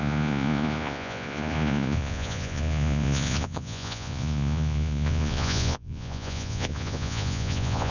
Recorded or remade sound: remade